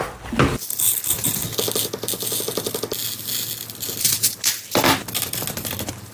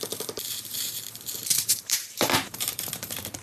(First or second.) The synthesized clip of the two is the second